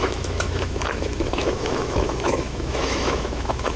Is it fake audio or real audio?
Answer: fake